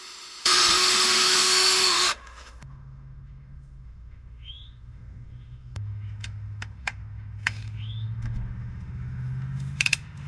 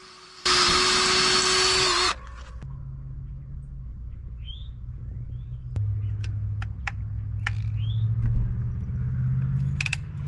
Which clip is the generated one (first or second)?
first